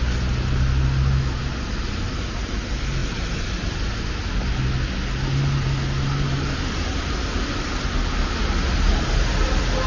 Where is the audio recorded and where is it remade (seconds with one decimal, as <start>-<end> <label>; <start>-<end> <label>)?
0.0-9.9 recorded